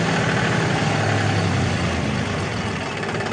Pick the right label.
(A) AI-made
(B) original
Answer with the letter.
B